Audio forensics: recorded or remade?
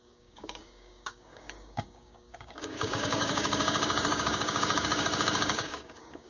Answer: remade